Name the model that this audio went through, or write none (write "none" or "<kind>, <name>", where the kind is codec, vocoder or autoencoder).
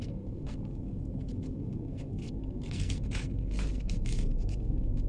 codec, SNAC